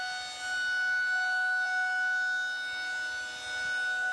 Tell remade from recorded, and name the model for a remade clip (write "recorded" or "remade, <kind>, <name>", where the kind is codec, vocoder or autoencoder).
recorded